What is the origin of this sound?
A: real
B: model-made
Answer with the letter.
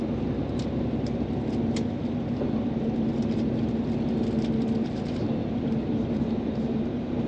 A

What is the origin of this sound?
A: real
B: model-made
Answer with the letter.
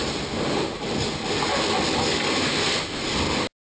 A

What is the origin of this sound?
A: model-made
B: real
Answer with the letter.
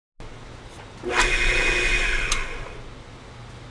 B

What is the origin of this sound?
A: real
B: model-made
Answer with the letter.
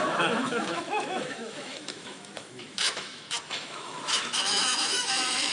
B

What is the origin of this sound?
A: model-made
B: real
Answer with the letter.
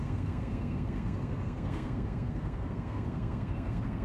A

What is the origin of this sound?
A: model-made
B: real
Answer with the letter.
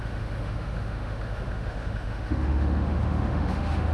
A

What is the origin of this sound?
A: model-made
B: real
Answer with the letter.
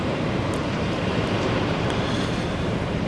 A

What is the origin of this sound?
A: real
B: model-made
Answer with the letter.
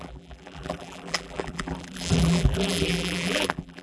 B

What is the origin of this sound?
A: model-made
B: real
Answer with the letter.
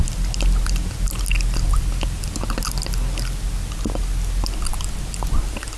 B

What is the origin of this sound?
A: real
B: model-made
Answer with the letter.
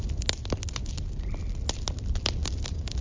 A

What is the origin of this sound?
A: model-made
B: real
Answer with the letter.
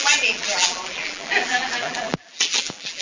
A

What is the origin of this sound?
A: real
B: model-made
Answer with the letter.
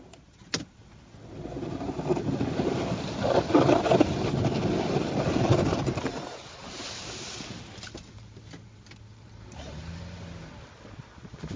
A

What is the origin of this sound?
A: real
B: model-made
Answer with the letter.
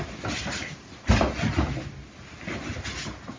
A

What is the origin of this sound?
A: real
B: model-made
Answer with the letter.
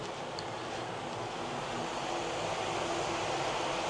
A